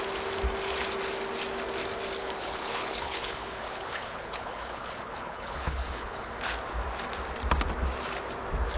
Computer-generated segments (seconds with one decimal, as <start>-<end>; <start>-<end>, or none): 2.2-6.3